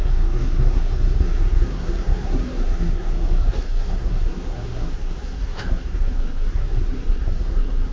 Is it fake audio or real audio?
fake